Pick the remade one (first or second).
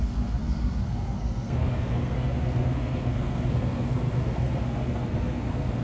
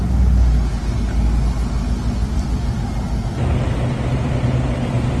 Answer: first